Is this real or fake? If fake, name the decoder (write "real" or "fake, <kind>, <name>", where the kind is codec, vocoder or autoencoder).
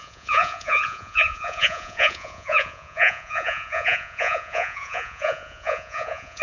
fake, vocoder, Vocos